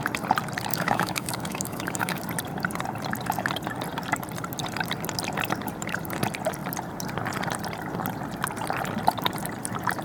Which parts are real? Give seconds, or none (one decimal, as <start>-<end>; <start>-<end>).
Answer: 0.0-0.7; 2.2-10.0

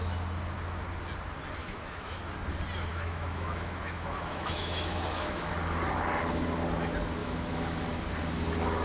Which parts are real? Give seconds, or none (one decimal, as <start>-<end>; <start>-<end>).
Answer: 0.0-1.6; 2.2-2.9; 5.5-7.2; 7.8-8.8

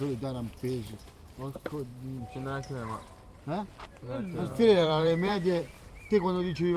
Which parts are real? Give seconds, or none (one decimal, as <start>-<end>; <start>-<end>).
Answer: 0.0-4.5; 5.9-6.8

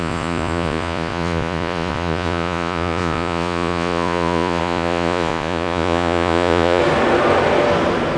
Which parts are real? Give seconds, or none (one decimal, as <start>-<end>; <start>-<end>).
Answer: 6.8-8.2